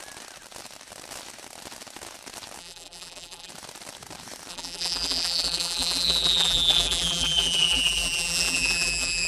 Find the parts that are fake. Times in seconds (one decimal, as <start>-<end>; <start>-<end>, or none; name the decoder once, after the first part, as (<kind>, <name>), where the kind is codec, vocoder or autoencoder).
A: 2.6-3.5 (vocoder, BigVGAN v2); 4.5-9.3